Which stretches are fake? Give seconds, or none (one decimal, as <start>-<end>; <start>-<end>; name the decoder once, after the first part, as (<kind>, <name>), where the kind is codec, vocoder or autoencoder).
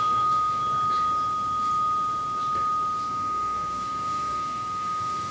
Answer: 0.0-0.6 (codec, SNAC); 3.1-5.3